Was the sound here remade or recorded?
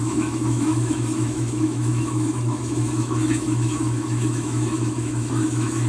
remade